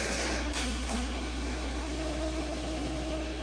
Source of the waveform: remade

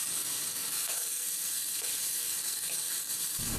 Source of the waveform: remade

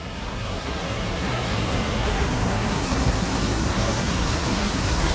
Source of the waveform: remade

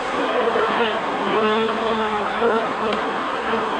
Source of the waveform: remade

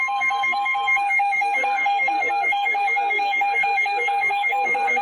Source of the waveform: remade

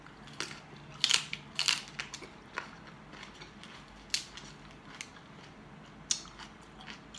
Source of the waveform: recorded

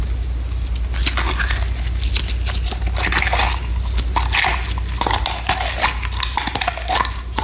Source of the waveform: recorded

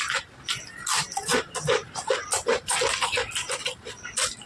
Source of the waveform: recorded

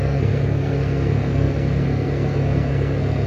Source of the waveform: remade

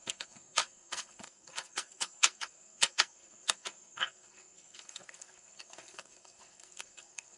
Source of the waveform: remade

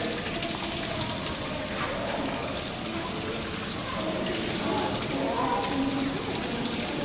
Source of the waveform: recorded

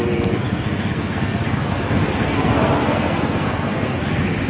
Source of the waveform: remade